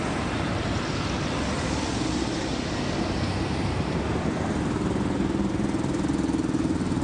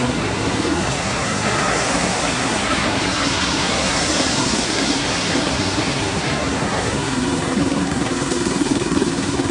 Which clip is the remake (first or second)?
second